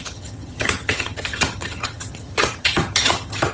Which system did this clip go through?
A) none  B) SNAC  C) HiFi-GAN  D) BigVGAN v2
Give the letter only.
C